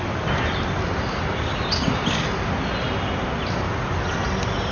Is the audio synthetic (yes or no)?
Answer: no